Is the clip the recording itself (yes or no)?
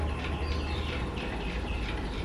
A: yes